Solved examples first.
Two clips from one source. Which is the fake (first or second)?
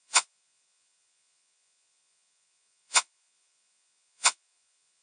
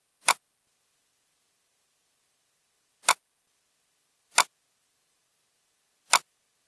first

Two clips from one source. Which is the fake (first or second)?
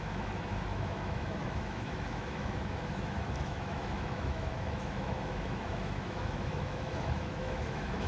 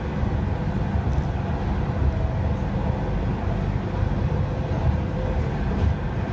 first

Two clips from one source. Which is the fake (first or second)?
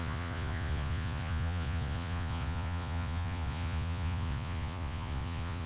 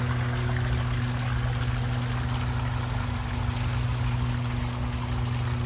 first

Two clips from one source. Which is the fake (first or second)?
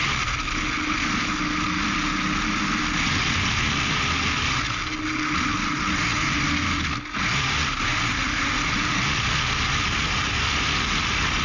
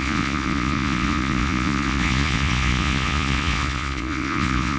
second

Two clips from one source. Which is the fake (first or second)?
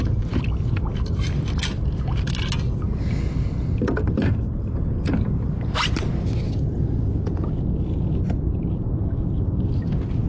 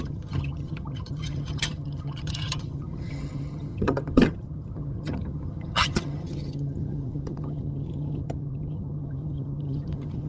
second